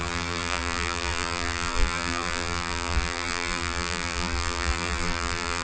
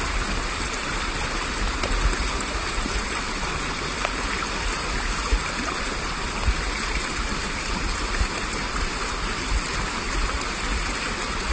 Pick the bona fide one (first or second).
second